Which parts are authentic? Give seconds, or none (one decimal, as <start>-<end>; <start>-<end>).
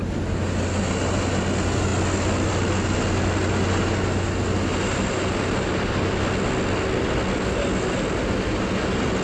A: 0.0-9.2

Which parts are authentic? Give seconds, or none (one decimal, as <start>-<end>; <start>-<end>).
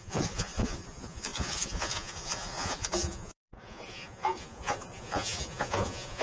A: none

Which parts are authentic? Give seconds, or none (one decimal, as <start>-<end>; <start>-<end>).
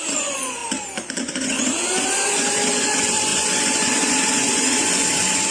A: 0.6-1.2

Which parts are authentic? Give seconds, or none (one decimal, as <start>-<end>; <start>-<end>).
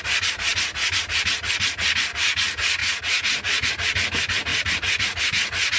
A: 0.0-2.8; 3.7-4.5; 5.2-5.8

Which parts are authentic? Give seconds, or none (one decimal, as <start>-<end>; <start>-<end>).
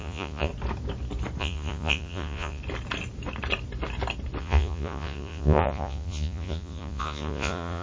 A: 0.5-1.4; 2.6-4.4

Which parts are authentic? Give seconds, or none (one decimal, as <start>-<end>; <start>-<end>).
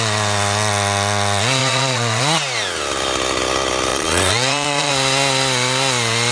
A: 0.0-1.6; 2.2-3.9; 4.9-6.3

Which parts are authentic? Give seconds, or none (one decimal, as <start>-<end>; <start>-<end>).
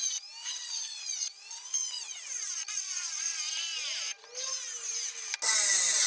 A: 0.0-0.4; 3.4-6.1